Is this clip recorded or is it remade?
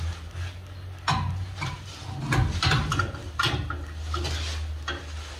recorded